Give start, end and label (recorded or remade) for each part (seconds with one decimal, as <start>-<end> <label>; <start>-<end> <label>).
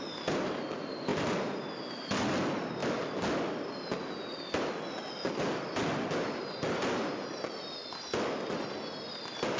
0.0-9.6 recorded